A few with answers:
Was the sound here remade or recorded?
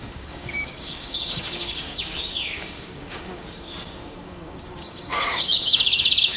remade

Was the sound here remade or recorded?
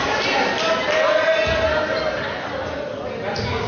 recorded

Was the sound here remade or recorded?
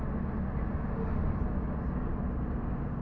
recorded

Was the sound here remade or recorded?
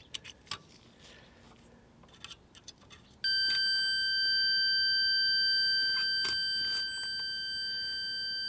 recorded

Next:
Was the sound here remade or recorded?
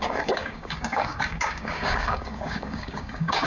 remade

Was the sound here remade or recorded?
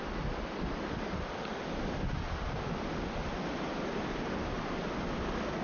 recorded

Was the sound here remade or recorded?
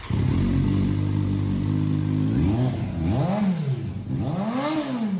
recorded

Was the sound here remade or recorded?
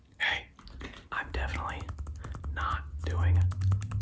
recorded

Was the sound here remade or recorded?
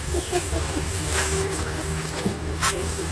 remade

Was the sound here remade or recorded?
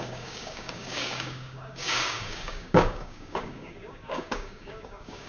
remade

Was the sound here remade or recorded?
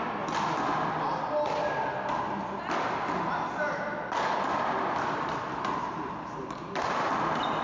recorded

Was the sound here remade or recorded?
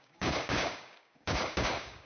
remade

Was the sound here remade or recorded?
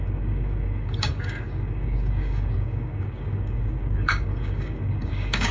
remade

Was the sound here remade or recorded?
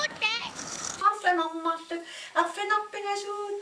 remade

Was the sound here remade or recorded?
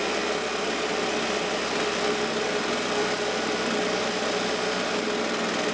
recorded